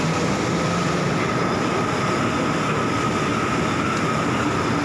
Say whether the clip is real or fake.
real